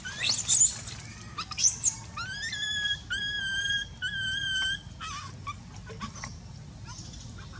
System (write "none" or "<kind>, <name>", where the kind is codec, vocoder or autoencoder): none